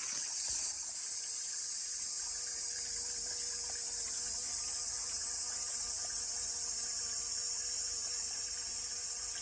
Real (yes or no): yes